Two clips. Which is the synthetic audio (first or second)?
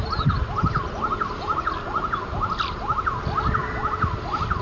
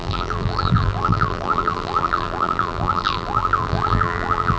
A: second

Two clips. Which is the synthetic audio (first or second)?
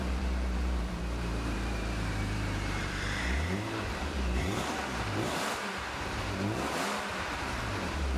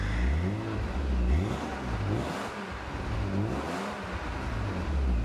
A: first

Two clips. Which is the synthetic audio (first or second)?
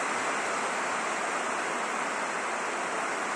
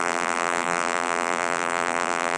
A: second